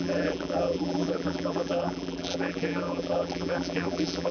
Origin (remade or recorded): remade